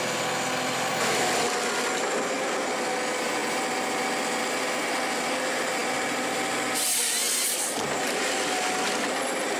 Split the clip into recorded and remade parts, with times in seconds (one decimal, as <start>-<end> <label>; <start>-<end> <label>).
0.0-3.4 recorded; 3.4-4.4 remade; 4.4-9.6 recorded